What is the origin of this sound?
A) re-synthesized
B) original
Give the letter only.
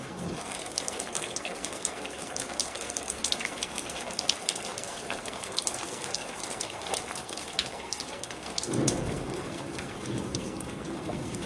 A